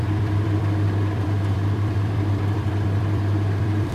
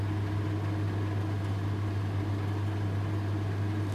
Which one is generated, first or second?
first